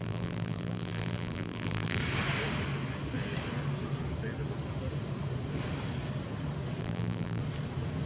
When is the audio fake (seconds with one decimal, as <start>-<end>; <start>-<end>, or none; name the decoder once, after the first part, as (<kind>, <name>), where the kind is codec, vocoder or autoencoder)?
0.0-2.0 (vocoder, BigVGAN v2); 6.8-7.4